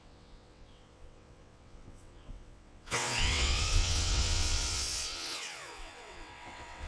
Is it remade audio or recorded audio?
remade